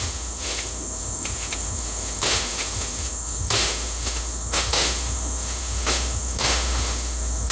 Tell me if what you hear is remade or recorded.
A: remade